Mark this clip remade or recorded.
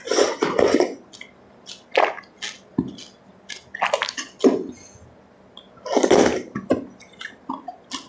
recorded